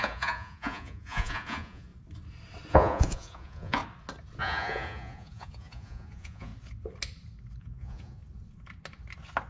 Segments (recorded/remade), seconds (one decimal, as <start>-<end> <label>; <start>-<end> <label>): 0.0-1.9 remade; 1.9-2.7 recorded; 2.7-3.8 remade; 3.8-4.4 recorded; 4.4-6.5 remade; 6.5-7.6 recorded; 7.6-8.2 remade; 8.2-9.5 recorded